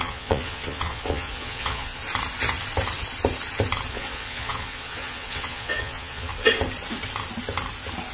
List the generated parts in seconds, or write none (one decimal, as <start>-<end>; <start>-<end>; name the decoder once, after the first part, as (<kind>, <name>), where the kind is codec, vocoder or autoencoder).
0.0-2.0 (vocoder, Vocos); 3.9-6.3